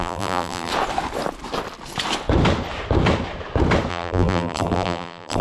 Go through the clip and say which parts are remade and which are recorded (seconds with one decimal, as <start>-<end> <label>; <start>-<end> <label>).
0.0-0.7 remade; 0.7-3.9 recorded; 3.9-5.4 remade

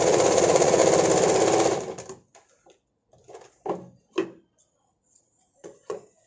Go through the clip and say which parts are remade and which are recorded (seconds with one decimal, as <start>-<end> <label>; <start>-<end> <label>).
0.0-0.8 remade; 0.8-4.6 recorded; 4.6-6.3 remade

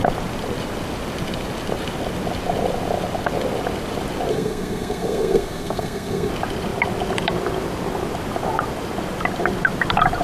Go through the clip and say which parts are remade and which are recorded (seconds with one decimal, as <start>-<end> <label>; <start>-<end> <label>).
0.0-4.3 recorded; 4.3-6.3 remade; 6.3-10.2 recorded

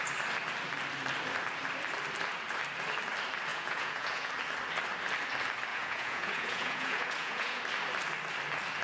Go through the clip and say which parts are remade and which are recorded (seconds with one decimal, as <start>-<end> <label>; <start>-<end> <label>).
0.0-3.5 recorded; 3.5-4.3 remade; 4.3-5.7 recorded; 5.7-7.6 remade; 7.6-8.8 recorded

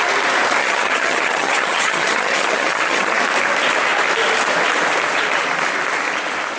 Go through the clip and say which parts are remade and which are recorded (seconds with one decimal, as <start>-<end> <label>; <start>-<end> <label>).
0.0-0.6 recorded; 0.6-3.2 remade; 3.2-6.6 recorded

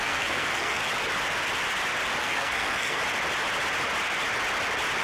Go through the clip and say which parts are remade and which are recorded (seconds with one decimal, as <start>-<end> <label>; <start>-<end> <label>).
0.0-0.8 remade; 0.8-2.2 recorded; 2.2-3.0 remade; 3.0-5.0 recorded

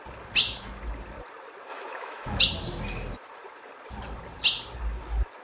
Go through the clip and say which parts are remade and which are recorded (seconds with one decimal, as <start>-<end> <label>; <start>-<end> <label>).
0.0-1.7 recorded; 1.7-2.4 remade; 2.4-5.4 recorded